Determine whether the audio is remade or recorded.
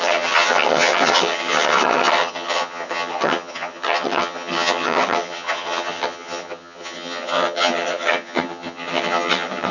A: remade